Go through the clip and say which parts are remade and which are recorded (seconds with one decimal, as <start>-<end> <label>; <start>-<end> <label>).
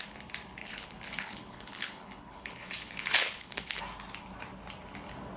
0.0-0.6 recorded; 0.6-3.8 remade; 3.8-5.4 recorded